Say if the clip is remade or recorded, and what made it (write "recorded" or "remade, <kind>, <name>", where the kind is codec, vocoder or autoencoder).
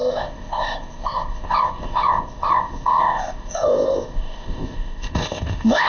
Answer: remade, codec, ZipCodec